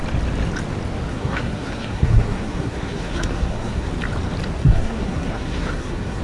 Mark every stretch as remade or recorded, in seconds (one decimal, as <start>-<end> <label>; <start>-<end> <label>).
0.0-1.1 recorded; 1.1-3.9 remade; 3.9-4.6 recorded; 4.6-6.2 remade